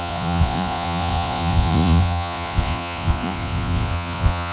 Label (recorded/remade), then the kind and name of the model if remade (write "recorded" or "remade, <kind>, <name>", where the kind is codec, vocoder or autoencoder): remade, vocoder, Vocos